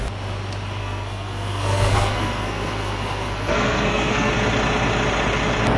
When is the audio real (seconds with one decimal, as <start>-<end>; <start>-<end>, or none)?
0.0-0.8; 4.3-5.8